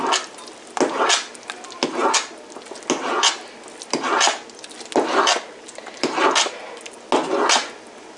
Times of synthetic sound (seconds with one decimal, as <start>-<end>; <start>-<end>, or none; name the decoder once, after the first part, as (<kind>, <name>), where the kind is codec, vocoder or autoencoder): none